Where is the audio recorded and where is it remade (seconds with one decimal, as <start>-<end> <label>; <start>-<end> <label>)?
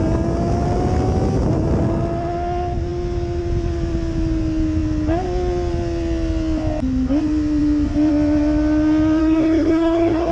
0.0-9.2 recorded; 9.2-10.3 remade